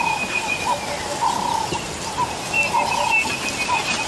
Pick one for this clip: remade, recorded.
recorded